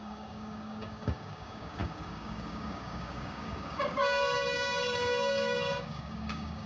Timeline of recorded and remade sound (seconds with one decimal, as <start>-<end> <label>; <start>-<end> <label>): 0.0-6.7 remade